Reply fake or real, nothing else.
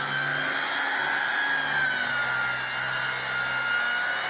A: real